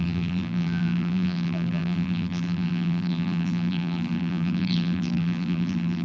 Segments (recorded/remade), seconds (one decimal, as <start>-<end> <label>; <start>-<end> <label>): 0.0-6.0 remade